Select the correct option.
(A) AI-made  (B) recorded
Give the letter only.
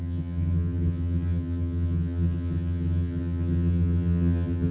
A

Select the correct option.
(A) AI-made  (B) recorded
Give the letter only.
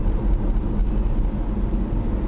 B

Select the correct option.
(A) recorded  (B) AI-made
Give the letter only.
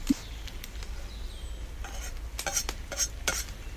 A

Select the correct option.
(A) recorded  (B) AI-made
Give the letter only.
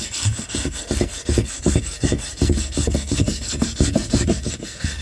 B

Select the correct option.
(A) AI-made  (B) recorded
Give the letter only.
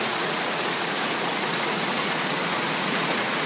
A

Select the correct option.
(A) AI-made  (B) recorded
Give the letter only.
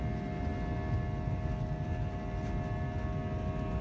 B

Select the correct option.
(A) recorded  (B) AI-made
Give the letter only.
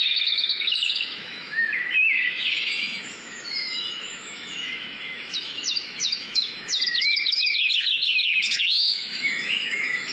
B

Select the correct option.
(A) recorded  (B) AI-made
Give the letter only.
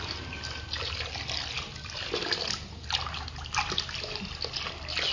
A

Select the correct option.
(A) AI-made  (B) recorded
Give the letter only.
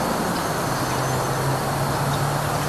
B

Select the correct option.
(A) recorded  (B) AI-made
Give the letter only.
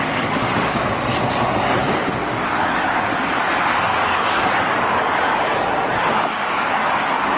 B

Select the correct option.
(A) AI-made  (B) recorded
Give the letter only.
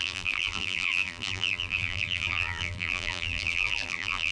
A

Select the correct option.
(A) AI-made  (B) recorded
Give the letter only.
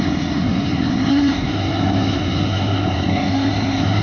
A